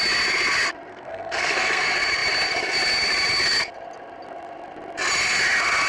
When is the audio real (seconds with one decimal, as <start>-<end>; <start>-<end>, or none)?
0.0-0.9; 1.8-5.9

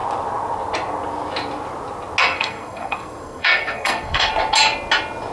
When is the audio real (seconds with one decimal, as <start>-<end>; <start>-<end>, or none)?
0.0-2.2; 4.3-5.3

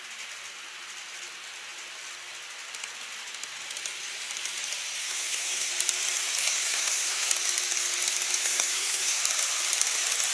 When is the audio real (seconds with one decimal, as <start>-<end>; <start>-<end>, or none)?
0.0-5.0; 5.7-6.4; 7.3-8.4; 9.2-10.3

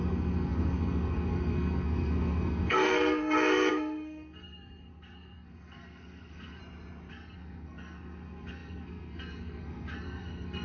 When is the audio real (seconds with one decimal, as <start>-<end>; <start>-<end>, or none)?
6.6-7.1

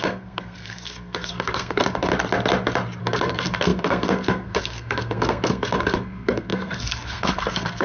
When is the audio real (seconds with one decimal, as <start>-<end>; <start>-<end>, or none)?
2.1-3.0

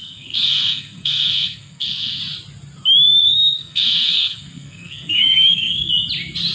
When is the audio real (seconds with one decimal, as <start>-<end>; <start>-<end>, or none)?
2.2-3.2; 5.9-6.5

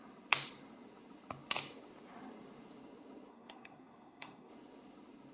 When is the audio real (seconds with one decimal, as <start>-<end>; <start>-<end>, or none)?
0.0-3.3; 4.5-5.3

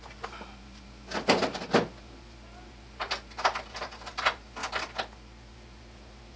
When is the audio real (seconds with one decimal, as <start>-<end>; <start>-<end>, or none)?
0.0-6.4